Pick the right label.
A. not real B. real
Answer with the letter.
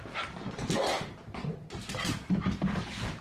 B